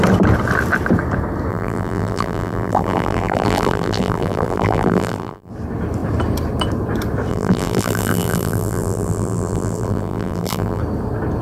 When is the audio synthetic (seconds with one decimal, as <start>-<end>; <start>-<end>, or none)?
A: 1.5-5.5; 7.3-10.8